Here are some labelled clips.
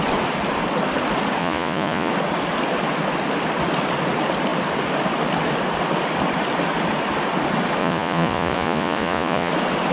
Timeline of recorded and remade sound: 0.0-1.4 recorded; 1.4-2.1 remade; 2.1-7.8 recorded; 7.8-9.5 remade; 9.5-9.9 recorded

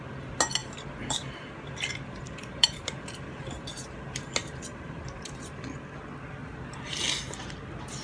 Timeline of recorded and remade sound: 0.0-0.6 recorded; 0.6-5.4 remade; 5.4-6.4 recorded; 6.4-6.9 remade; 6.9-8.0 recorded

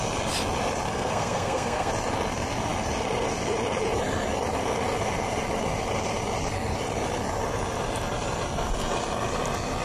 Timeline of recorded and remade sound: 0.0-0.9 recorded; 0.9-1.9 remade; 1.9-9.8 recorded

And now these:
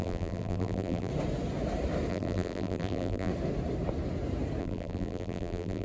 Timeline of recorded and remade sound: 0.0-1.1 remade; 1.1-2.1 recorded; 2.1-3.3 remade; 3.3-4.6 recorded; 4.6-5.8 remade